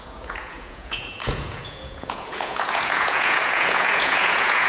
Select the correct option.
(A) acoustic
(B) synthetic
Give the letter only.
B